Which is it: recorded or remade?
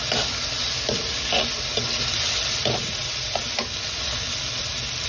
recorded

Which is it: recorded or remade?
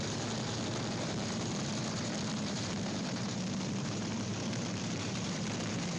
remade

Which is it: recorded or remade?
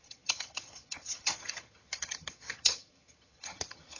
remade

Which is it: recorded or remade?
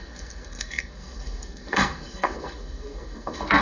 remade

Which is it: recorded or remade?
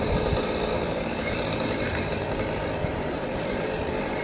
remade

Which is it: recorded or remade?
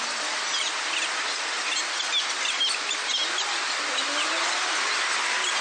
recorded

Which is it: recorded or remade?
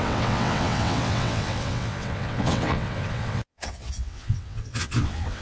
remade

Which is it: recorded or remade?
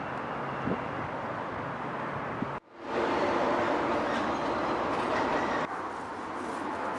recorded